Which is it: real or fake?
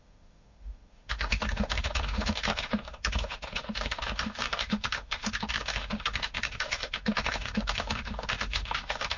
fake